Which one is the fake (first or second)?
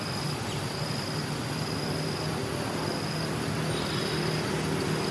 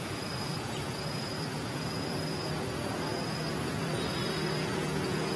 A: second